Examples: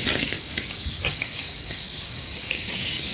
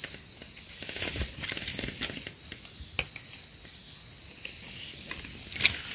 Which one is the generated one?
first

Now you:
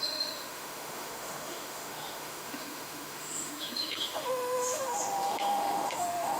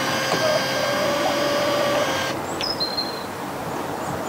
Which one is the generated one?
first